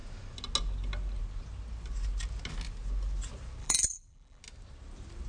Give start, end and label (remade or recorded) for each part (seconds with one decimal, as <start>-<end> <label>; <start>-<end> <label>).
0.0-3.6 recorded; 3.6-4.4 remade; 4.4-5.3 recorded